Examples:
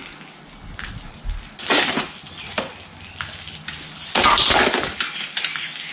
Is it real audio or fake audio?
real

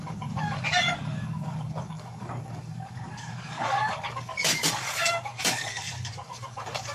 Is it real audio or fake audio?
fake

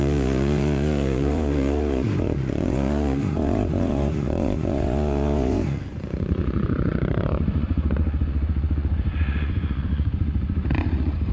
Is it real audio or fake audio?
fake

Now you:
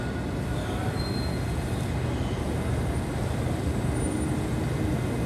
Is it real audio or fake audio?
real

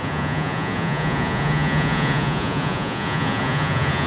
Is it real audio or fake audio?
fake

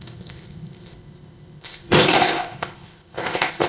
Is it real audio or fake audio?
fake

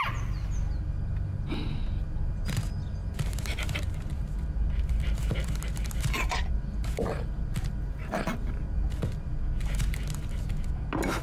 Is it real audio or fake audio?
real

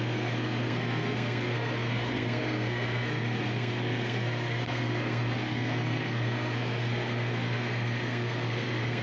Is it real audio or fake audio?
fake